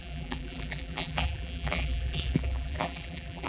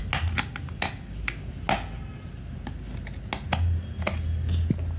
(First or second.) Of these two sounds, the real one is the second